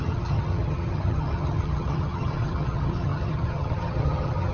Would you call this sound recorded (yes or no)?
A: no